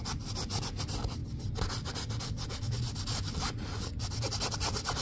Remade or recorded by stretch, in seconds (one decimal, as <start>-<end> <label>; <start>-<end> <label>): 0.0-5.0 recorded

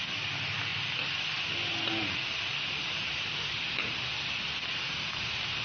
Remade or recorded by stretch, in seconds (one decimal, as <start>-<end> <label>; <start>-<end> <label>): 0.0-5.6 recorded

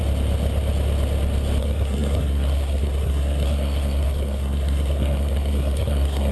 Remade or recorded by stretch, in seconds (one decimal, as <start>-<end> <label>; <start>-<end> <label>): 0.0-1.6 recorded; 1.6-6.3 remade

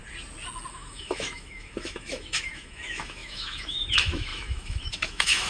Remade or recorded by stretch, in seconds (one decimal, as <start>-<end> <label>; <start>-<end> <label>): 0.0-0.7 recorded; 0.7-5.5 remade

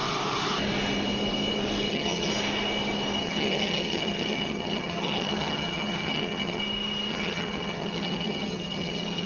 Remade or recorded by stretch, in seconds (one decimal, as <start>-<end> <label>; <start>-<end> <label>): 0.0-1.9 recorded; 1.9-2.3 remade; 2.3-3.2 recorded; 3.2-6.6 remade; 6.6-7.1 recorded; 7.1-9.3 remade

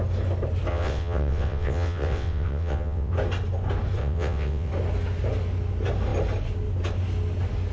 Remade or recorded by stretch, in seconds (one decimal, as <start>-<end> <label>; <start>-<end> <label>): 0.0-0.7 recorded; 0.7-3.1 remade; 3.1-4.0 recorded; 4.0-4.7 remade; 4.7-7.7 recorded

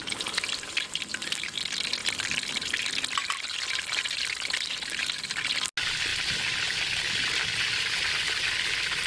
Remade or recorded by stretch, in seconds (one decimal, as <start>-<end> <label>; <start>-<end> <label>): 0.0-9.1 recorded

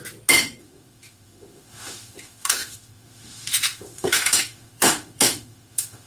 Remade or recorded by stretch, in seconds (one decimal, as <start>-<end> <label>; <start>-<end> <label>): 0.0-0.6 recorded; 0.6-6.1 remade